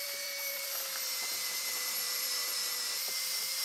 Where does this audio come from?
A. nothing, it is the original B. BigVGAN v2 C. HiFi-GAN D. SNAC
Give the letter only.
B